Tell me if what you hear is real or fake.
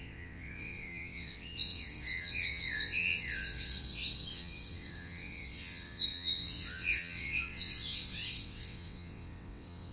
fake